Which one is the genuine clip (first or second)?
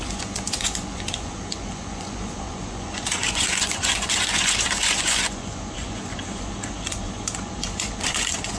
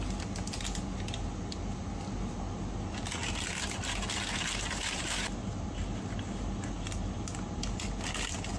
second